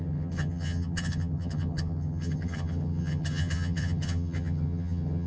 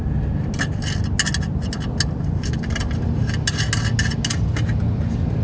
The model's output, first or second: first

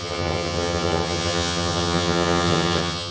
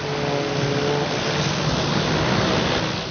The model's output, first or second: first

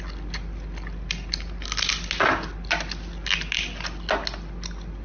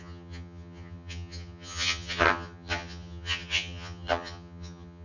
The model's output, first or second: second